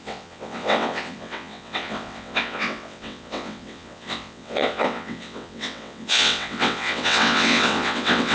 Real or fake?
fake